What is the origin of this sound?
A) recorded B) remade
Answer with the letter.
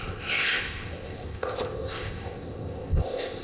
B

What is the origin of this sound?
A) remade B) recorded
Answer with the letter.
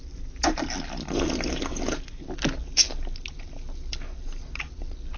B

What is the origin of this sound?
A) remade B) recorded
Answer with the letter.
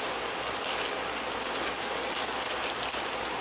B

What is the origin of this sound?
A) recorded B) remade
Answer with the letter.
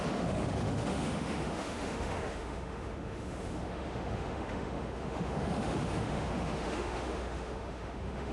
B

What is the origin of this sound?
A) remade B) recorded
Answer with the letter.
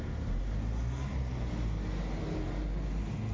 B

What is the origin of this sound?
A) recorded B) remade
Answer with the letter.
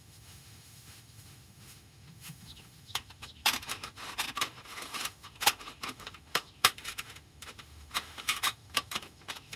B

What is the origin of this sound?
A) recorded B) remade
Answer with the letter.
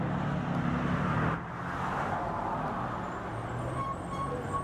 A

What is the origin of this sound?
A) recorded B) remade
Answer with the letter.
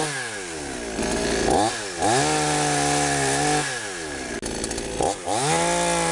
A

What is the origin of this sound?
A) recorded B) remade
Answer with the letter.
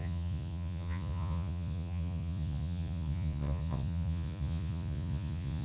B